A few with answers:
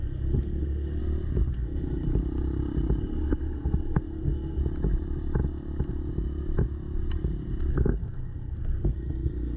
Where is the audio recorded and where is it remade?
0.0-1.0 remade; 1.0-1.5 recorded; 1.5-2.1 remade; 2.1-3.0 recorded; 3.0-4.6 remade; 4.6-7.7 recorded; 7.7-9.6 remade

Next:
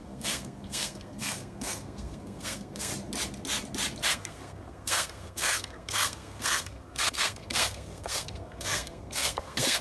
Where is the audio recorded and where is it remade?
0.0-2.9 remade; 2.9-4.1 recorded; 4.1-9.8 remade

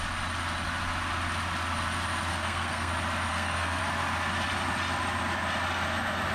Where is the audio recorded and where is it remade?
0.0-2.3 recorded; 2.3-2.9 remade; 2.9-3.3 recorded; 3.3-3.8 remade; 3.8-6.3 recorded

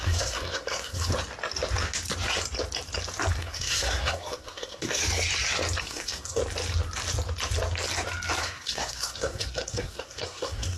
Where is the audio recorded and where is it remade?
0.0-1.1 remade; 1.1-3.3 recorded; 3.3-5.0 remade; 5.0-5.8 recorded; 5.8-6.4 remade; 6.4-8.4 recorded; 8.4-10.8 remade